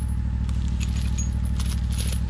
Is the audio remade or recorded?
recorded